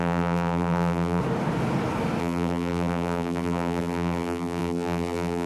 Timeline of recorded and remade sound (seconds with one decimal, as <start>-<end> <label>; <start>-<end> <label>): 0.0-1.2 remade; 1.2-2.2 recorded; 2.2-5.5 remade